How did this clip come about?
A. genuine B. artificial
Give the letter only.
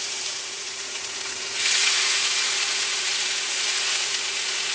B